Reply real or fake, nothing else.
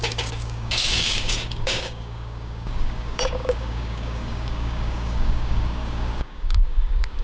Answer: fake